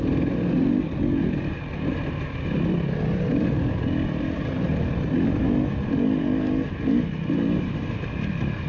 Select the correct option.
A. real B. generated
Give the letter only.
A